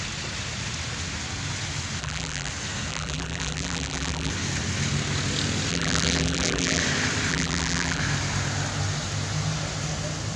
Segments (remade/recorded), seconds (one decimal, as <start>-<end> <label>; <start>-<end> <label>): 0.0-2.0 recorded; 2.0-2.5 remade; 2.5-2.9 recorded; 2.9-4.3 remade; 4.3-5.7 recorded; 5.7-6.8 remade; 6.8-7.3 recorded; 7.3-8.0 remade; 8.0-10.4 recorded